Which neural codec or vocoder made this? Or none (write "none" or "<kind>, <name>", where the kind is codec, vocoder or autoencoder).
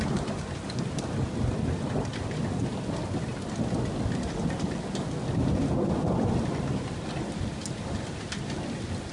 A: none